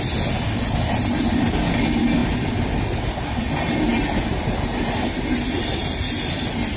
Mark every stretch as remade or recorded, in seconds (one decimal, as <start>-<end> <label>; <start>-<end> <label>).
0.0-6.8 recorded

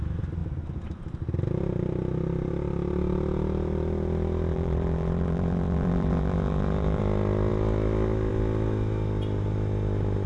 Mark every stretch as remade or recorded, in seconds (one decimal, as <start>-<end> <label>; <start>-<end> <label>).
0.0-4.5 recorded; 4.5-7.0 remade; 7.0-10.3 recorded

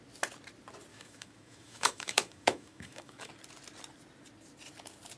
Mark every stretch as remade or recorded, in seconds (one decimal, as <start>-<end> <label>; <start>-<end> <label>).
0.0-0.9 recorded; 0.9-3.3 remade; 3.3-5.2 recorded

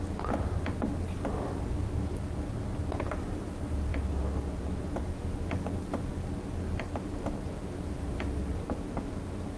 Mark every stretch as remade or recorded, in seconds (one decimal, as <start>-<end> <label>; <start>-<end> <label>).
0.0-9.6 recorded

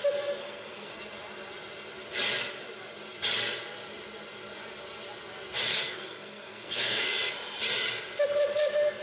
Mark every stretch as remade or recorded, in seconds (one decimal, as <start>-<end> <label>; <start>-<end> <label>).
0.0-0.4 recorded; 0.4-1.0 remade; 1.0-5.7 recorded; 5.7-7.3 remade; 7.3-9.0 recorded

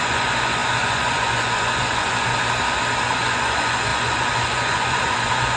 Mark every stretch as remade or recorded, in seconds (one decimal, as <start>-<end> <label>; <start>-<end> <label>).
0.0-2.3 remade; 2.3-3.0 recorded; 3.0-5.6 remade

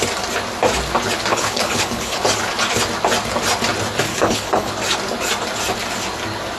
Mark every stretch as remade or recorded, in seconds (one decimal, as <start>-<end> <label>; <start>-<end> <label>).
0.0-1.3 recorded; 1.3-2.2 remade; 2.2-4.1 recorded; 4.1-4.7 remade; 4.7-6.6 recorded

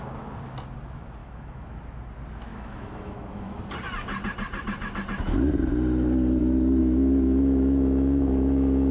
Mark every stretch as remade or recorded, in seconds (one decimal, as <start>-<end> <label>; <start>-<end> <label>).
0.0-1.2 recorded; 1.2-1.8 remade; 1.8-2.5 recorded; 2.5-3.6 remade; 3.6-6.8 recorded; 6.8-8.9 remade